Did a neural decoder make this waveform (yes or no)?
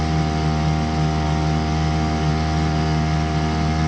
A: no